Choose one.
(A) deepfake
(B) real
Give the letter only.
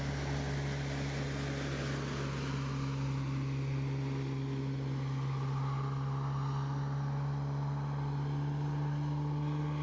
B